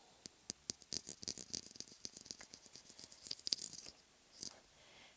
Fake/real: real